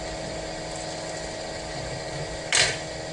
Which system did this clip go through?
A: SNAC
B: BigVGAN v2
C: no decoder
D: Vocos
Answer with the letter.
C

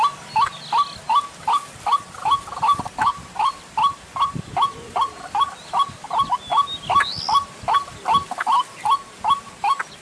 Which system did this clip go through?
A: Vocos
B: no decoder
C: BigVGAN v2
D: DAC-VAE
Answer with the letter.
B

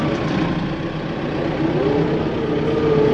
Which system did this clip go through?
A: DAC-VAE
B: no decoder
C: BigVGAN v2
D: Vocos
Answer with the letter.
B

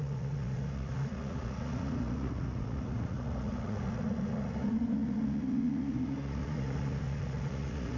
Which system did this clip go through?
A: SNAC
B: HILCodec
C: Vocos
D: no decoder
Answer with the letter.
C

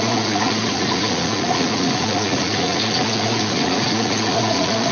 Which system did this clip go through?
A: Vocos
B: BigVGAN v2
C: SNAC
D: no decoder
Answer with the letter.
A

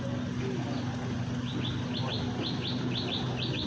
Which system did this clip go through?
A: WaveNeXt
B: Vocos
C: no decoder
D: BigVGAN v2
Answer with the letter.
C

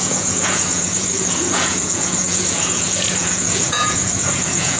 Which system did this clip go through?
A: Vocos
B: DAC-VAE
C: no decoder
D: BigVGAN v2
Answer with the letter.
A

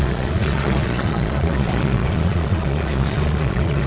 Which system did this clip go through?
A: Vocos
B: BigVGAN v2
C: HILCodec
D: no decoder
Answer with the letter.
A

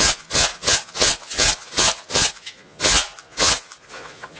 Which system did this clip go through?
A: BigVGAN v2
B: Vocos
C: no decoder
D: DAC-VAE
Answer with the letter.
B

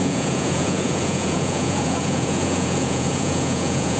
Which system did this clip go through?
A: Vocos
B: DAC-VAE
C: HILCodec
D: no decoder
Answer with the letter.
A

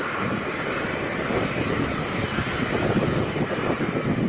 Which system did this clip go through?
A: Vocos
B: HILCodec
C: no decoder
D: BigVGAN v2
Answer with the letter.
C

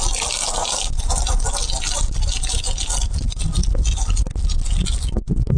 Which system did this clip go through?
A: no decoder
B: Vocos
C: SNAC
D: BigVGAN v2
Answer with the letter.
A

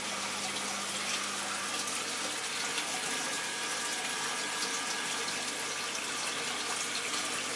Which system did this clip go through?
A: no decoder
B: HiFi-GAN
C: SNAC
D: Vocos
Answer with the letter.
A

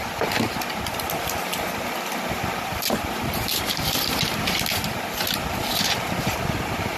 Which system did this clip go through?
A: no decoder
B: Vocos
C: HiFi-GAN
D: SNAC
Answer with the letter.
A